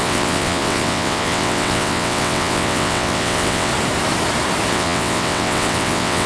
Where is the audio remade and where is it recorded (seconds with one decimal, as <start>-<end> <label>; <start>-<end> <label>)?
0.0-3.7 remade; 3.7-4.7 recorded; 4.7-6.3 remade